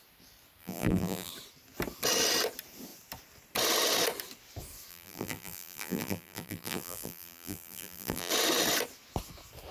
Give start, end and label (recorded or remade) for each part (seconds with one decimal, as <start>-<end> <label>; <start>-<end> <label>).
0.0-0.6 recorded; 0.6-1.3 remade; 1.3-4.9 recorded; 4.9-8.3 remade; 8.3-9.7 recorded